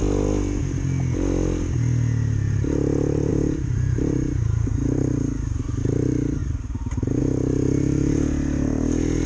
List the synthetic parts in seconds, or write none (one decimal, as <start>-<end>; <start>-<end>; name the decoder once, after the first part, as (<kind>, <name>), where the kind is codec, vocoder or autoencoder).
3.3-5.8 (vocoder, BigVGAN v2); 6.4-7.2